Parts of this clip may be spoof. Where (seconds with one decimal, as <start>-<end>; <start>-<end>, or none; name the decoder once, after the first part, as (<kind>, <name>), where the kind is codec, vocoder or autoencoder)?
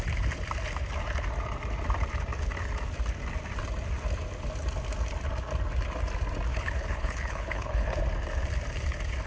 6.5-8.0 (codec, HILCodec)